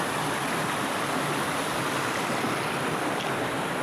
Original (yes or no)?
yes